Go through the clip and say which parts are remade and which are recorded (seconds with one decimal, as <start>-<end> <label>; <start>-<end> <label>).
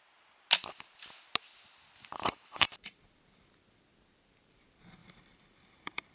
0.0-2.1 recorded; 2.1-3.0 remade; 3.0-5.0 recorded; 5.0-6.1 remade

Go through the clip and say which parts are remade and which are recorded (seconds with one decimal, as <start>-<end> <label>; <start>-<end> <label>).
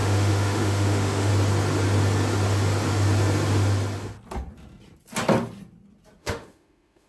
0.0-1.3 remade; 1.3-6.2 recorded; 6.2-7.1 remade